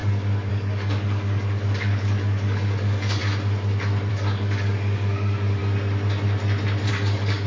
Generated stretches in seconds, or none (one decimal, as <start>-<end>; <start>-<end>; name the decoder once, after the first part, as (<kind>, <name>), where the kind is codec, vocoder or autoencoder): 0.0-3.2 (codec, DAC); 4.1-5.6; 6.9-7.5